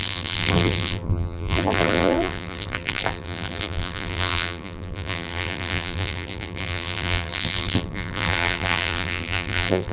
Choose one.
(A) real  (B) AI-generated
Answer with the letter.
B